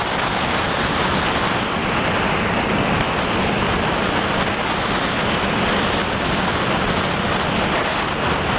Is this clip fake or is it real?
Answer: real